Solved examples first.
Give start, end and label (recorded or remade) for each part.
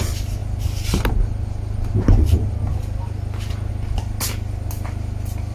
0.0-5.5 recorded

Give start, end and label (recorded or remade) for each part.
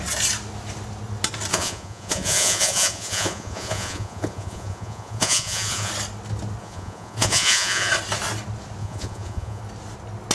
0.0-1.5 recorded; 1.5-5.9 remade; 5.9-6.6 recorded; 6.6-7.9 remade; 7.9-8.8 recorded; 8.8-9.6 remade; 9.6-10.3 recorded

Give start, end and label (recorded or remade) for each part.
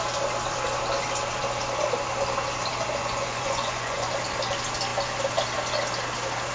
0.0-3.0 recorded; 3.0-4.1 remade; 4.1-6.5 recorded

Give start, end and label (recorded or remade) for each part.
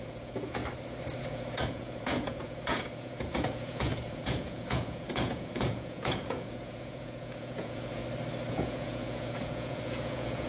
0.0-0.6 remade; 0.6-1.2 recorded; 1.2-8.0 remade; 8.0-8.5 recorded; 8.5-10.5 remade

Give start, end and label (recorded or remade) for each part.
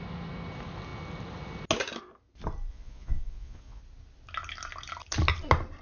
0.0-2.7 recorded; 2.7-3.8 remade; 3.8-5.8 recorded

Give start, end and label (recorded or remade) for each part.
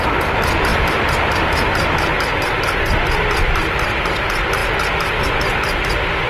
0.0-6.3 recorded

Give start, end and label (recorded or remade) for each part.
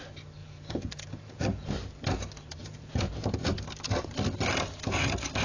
0.0-0.4 recorded; 0.4-1.7 remade; 1.7-2.6 recorded; 2.6-3.5 remade; 3.5-5.4 recorded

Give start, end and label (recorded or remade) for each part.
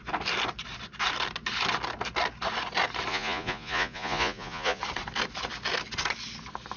0.0-3.1 recorded; 3.1-4.8 remade; 4.8-6.8 recorded